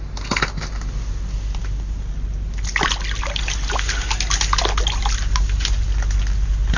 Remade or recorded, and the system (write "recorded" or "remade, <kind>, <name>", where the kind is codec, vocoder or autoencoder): recorded